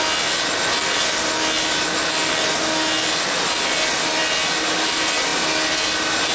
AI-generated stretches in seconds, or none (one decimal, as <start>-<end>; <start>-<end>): none